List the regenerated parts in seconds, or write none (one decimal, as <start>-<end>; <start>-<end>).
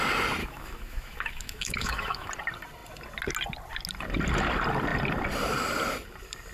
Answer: 0.4-2.3